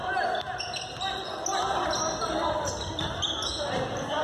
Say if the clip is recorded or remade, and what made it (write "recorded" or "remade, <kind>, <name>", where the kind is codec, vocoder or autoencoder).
recorded